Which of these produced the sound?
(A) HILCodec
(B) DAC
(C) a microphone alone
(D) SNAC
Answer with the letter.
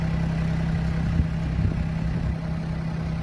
C